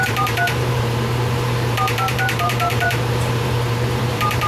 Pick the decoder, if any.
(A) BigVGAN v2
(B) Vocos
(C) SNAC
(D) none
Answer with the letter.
A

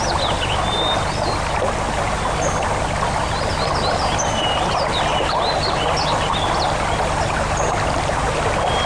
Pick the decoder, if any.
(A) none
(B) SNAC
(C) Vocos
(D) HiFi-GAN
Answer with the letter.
A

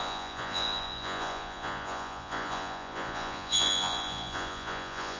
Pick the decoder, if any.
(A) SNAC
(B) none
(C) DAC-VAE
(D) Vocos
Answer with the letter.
D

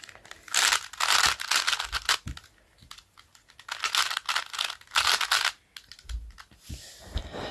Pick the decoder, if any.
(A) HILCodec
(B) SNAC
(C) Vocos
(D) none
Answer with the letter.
D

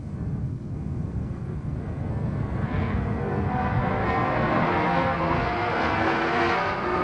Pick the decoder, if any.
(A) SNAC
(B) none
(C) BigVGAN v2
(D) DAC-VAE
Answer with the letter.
A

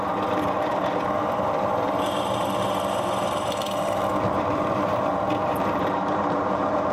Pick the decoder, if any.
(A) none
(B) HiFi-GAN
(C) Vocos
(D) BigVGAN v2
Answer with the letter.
D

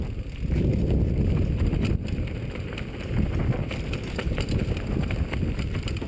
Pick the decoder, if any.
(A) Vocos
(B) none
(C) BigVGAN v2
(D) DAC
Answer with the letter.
B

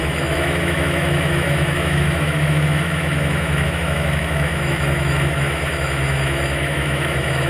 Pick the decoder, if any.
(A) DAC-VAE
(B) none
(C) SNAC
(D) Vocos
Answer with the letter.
A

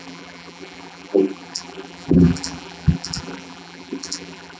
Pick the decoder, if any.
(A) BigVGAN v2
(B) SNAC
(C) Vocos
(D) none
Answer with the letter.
A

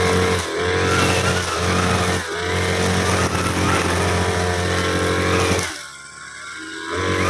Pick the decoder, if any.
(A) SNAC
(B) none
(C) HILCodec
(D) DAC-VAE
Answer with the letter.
B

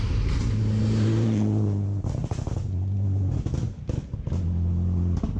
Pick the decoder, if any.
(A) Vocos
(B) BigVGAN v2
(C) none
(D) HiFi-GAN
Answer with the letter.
C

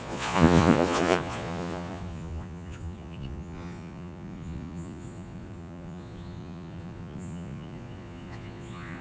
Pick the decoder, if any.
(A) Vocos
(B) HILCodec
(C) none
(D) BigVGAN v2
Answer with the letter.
A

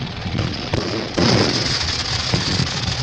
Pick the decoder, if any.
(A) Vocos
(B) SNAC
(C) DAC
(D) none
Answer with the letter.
A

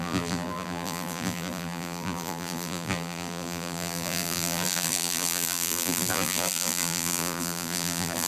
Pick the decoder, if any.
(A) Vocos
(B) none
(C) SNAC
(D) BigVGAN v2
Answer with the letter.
D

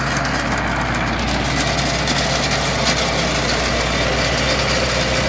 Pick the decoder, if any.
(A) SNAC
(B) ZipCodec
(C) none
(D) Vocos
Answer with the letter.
C